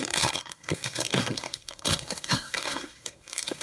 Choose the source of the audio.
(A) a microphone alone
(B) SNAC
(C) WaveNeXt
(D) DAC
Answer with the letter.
B